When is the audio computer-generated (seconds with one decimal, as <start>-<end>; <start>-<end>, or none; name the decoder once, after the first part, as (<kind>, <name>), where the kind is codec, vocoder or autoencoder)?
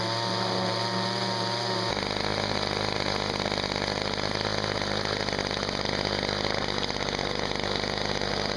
none